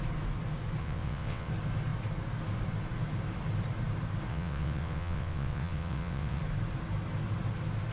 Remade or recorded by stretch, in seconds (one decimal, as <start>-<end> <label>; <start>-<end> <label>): 0.0-0.8 recorded; 0.8-1.5 remade; 1.5-4.3 recorded; 4.3-6.4 remade; 6.4-7.9 recorded